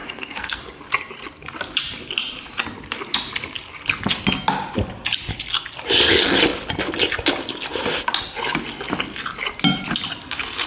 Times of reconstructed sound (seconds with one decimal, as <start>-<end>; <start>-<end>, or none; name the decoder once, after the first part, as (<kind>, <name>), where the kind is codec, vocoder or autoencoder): 0.0-0.6 (codec, SNAC)